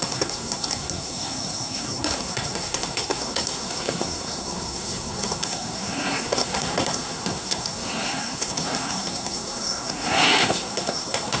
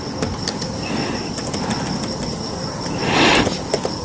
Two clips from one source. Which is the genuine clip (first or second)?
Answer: second